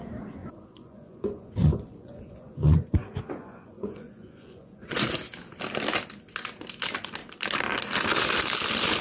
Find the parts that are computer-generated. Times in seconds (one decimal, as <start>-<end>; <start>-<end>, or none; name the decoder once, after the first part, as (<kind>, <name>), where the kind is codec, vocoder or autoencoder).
0.4-5.1 (vocoder, Vocos)